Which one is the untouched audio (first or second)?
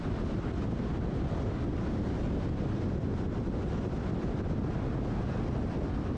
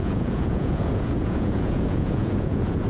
first